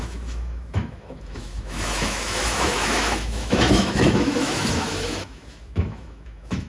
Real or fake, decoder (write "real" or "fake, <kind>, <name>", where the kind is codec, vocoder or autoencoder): fake, autoencoder, DAC-VAE